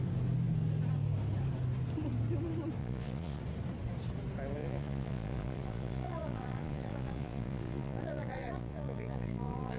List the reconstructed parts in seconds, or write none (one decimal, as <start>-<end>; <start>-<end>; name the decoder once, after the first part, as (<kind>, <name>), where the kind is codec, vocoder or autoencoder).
2.8-3.4 (vocoder, Vocos); 4.6-9.8